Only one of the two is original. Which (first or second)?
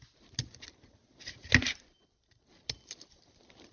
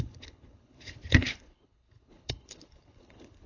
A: first